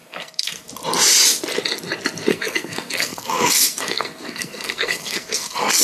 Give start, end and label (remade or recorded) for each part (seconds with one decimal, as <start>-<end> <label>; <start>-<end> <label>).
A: 0.0-0.7 remade; 0.7-2.3 recorded; 2.3-5.8 remade